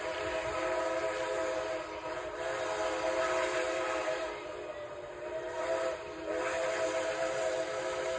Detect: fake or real real